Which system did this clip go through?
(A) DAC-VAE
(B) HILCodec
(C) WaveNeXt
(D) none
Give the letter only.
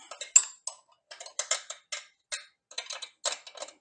D